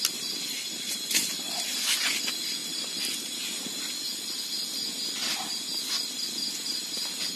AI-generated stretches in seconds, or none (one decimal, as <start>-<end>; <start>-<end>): none